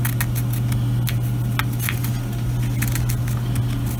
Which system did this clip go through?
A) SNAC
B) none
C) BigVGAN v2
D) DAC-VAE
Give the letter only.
B